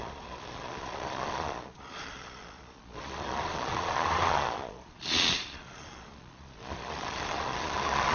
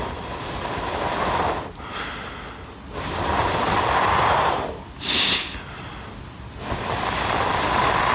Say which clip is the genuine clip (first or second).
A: second